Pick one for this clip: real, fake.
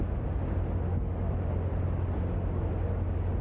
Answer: real